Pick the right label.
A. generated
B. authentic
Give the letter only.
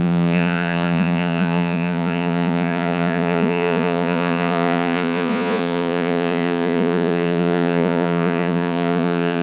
A